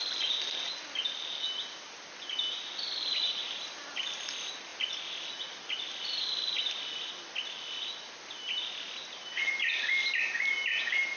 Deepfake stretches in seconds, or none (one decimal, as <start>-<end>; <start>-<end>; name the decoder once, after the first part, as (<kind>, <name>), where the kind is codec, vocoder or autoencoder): none